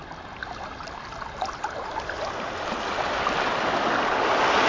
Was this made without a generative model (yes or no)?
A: yes